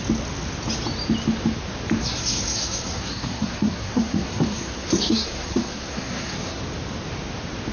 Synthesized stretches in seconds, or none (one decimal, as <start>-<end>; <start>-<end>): 2.0-6.6